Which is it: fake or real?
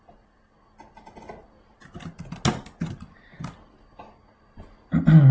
real